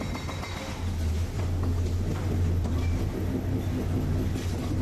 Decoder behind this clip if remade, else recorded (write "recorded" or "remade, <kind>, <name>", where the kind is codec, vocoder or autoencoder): recorded